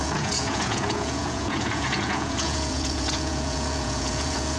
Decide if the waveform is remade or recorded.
remade